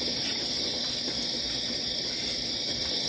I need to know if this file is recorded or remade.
recorded